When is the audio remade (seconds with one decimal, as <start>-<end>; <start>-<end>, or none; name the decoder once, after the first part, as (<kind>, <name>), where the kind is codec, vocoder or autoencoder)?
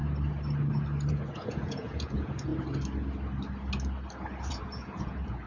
1.1-2.5 (vocoder, Vocos); 4.5-5.5